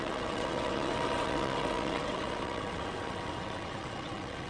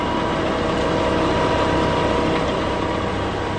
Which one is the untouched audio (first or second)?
second